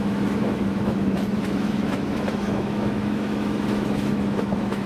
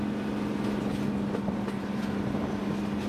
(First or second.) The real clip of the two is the second